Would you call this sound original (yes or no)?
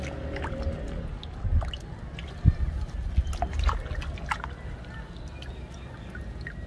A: yes